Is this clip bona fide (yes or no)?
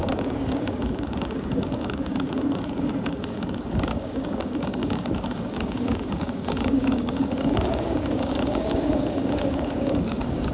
no